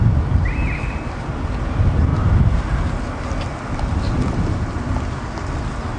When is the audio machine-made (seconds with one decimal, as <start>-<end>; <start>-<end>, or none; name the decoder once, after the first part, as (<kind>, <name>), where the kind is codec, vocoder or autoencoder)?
none